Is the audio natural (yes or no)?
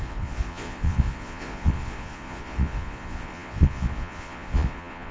no